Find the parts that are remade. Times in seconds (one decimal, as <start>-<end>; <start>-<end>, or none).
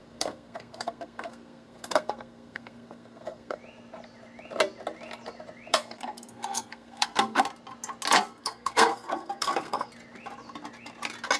0.0-3.6; 5.7-7.4; 8.3-9.9